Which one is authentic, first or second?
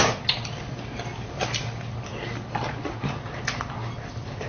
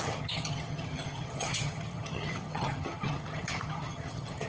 first